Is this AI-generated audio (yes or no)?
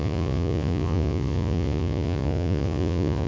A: yes